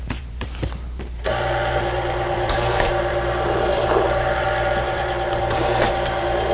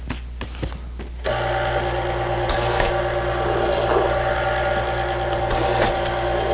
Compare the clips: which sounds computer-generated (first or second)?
first